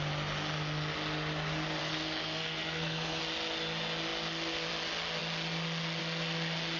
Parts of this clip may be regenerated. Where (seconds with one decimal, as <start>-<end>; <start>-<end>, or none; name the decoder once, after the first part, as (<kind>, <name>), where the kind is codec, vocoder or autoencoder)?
1.8-3.2 (codec, SNAC)